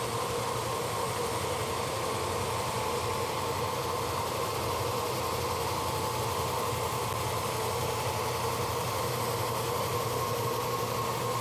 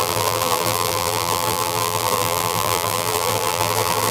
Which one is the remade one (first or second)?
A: second